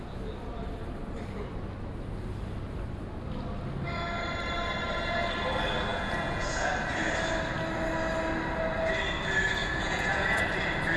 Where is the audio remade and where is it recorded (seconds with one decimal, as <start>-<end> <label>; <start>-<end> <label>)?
0.0-5.9 recorded; 5.9-6.7 remade; 6.7-9.6 recorded; 9.6-10.4 remade; 10.4-11.0 recorded